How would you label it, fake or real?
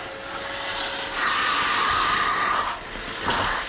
real